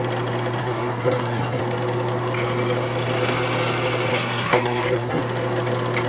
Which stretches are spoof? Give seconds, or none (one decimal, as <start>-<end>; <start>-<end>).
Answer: 0.6-1.6; 4.1-5.2